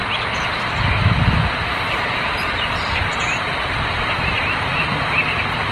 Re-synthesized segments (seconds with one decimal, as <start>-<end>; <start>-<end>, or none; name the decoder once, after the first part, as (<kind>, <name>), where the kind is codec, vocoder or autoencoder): 0.7-3.1 (vocoder, BigVGAN v2); 3.7-5.7